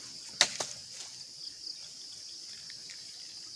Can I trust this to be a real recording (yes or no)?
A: yes